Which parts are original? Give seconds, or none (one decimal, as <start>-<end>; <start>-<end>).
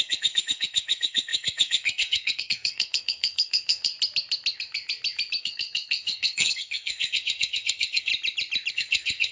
3.9-5.4; 8.1-8.7